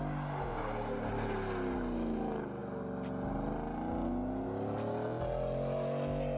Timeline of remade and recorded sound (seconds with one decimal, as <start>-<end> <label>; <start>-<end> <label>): 0.0-6.4 recorded